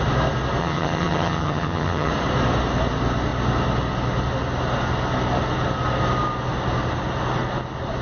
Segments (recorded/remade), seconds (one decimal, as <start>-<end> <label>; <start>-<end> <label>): 0.0-0.6 recorded; 0.6-2.1 remade; 2.1-8.0 recorded